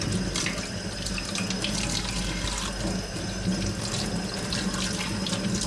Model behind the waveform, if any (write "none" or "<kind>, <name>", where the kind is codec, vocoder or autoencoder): none